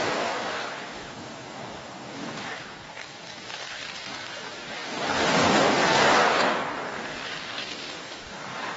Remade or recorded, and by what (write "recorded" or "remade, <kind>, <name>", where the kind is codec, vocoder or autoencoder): remade, codec, DAC